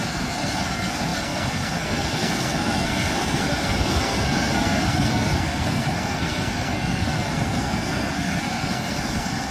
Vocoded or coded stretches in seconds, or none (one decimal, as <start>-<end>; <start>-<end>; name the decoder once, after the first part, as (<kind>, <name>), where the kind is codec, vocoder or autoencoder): 0.0-9.5 (codec, SNAC)